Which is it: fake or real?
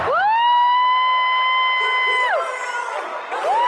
real